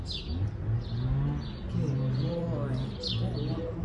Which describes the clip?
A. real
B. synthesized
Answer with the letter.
A